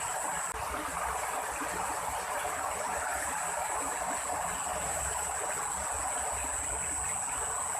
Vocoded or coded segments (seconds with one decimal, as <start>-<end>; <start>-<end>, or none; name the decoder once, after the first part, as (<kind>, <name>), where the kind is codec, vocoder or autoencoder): 4.7-5.3 (vocoder, BigVGAN v2)